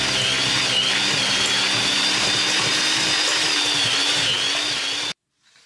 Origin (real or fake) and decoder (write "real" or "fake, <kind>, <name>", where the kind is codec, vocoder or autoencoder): real